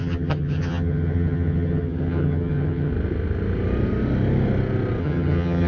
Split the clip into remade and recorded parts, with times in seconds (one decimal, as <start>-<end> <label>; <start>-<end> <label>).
0.0-2.9 remade; 2.9-5.0 recorded; 5.0-5.7 remade